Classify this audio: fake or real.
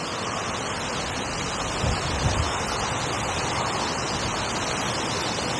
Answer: real